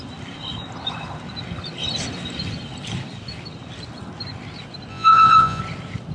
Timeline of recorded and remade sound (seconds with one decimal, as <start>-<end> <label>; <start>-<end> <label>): 0.0-4.9 recorded; 4.9-5.6 remade; 5.6-6.1 recorded